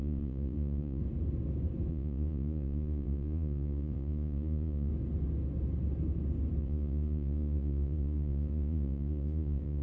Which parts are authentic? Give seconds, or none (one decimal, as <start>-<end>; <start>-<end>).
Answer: 1.0-1.9; 4.9-6.6